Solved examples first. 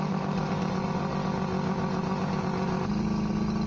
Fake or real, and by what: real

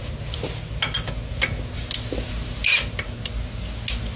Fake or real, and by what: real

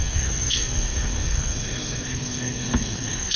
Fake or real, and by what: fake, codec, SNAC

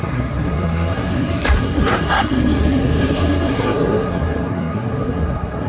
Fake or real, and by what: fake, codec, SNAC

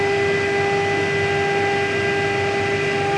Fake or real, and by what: real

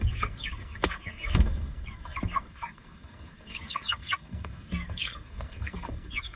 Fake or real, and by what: fake, codec, SNAC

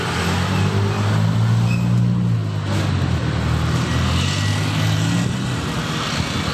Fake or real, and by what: real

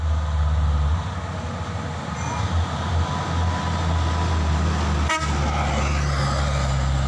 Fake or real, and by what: real